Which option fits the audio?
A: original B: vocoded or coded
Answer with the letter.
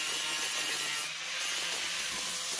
A